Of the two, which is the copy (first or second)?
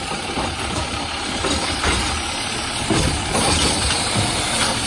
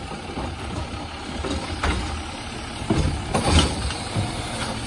first